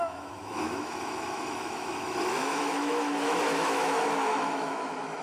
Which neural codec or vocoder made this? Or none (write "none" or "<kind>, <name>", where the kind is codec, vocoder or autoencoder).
autoencoder, DAC-VAE